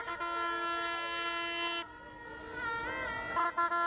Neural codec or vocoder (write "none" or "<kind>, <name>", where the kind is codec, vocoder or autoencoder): none